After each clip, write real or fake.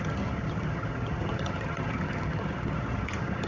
fake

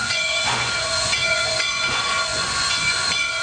fake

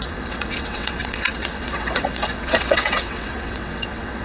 fake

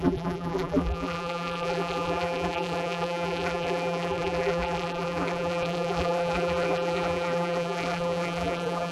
fake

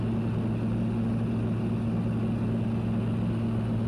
real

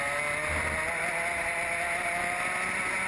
real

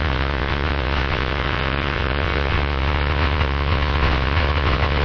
fake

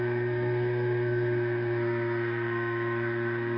fake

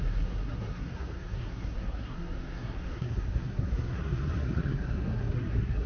fake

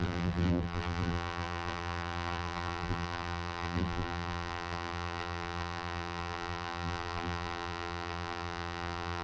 fake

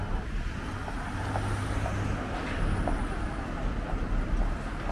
real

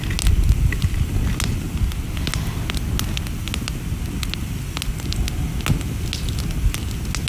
real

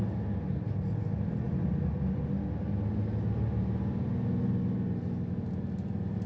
real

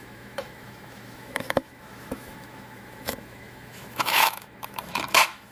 fake